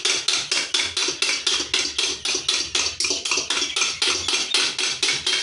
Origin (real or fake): real